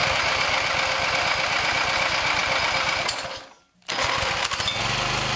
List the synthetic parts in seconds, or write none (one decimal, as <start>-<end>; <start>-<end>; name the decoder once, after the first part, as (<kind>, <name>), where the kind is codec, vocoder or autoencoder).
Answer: none